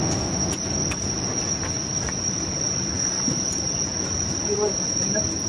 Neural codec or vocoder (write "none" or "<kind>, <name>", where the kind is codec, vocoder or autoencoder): none